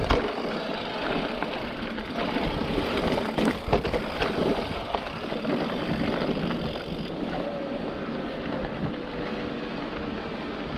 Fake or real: real